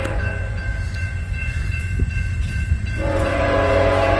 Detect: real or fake fake